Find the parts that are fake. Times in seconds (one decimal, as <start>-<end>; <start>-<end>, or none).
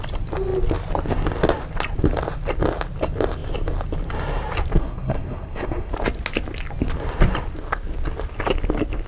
4.8-5.9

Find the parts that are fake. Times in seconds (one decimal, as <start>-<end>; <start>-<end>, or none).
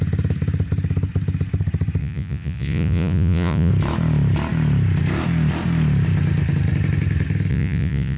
2.0-3.7; 7.5-8.2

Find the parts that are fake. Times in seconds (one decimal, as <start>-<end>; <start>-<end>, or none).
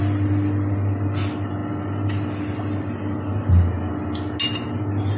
none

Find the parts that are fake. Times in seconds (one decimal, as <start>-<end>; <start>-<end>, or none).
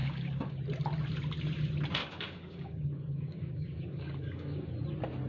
0.0-0.6; 2.0-4.7